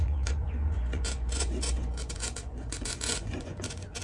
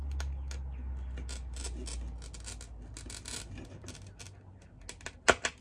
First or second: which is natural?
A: second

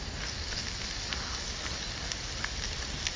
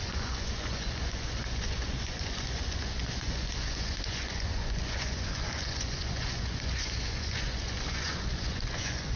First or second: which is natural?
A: first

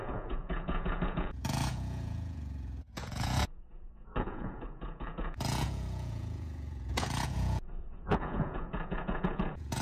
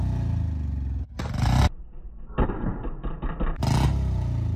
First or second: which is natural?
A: second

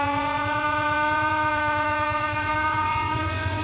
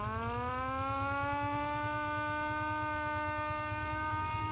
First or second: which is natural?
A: second